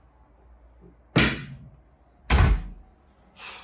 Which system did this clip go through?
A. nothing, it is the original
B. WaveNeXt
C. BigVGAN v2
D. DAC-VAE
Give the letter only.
A